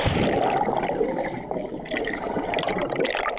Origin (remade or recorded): recorded